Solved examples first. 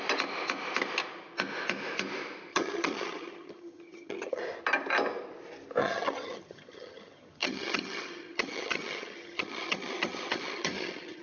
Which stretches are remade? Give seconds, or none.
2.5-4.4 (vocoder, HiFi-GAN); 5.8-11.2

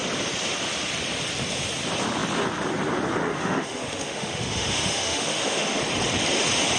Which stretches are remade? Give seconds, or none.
3.3-5.8 (autoencoder, DAC-VAE)

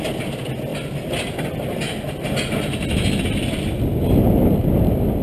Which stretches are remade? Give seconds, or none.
none

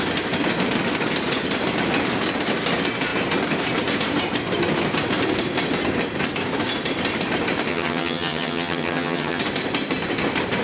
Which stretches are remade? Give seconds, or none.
7.7-9.4 (vocoder, HiFi-GAN)